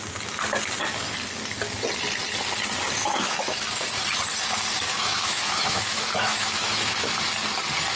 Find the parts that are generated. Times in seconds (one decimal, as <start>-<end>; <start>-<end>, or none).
3.0-3.7; 4.9-7.2